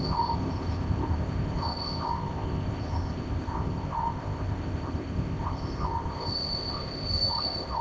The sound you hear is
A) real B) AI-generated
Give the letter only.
B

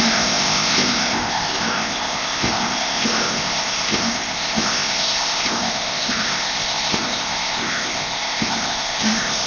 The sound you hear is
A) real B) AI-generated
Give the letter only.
B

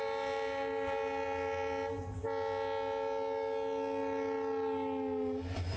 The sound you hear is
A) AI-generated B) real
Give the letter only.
B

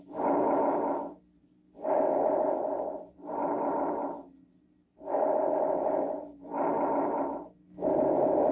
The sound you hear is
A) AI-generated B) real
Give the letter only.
B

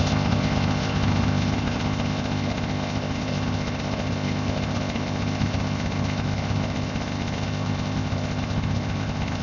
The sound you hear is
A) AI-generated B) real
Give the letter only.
A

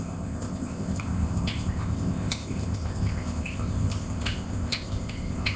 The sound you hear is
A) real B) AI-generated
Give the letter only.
B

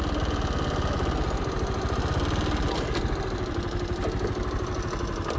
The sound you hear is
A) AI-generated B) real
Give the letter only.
B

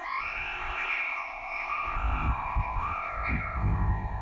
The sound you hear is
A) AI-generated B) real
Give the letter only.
A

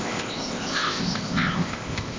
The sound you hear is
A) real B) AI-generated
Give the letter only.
B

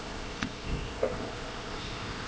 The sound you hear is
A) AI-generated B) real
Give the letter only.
A